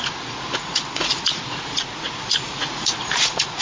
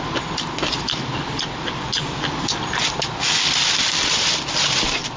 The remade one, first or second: first